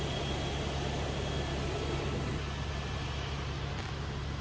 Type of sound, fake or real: real